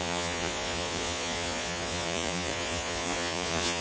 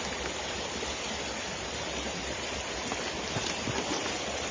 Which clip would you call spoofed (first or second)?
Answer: first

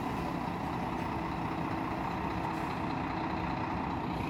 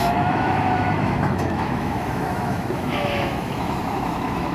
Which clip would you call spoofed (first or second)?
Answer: second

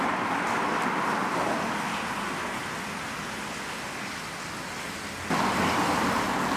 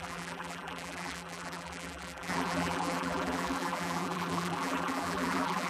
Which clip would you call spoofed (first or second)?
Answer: second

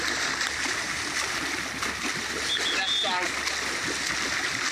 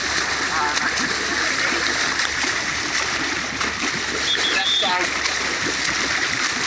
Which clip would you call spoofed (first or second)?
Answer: second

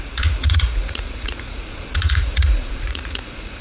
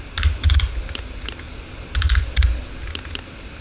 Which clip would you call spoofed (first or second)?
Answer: first